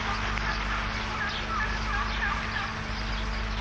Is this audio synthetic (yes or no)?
no